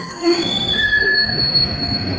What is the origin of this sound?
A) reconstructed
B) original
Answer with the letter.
A